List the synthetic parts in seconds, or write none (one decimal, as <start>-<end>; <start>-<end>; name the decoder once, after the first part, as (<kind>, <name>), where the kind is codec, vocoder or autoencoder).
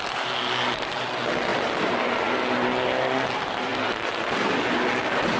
none